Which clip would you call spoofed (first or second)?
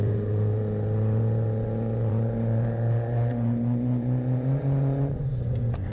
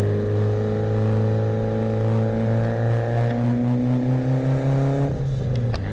first